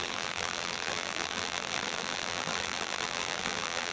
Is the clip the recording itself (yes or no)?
no